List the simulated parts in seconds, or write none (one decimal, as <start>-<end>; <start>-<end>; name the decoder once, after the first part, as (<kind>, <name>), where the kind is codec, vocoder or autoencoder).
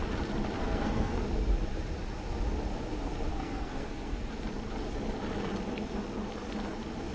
0.6-1.2 (codec, SNAC); 3.3-4.3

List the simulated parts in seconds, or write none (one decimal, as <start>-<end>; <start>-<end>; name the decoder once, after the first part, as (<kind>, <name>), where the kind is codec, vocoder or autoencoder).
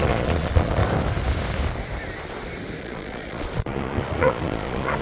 0.0-0.8 (vocoder, Vocos); 2.8-5.0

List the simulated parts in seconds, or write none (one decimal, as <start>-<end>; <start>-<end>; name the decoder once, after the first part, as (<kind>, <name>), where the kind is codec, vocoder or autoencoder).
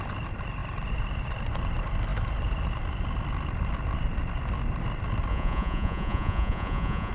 5.3-7.1 (vocoder, Vocos)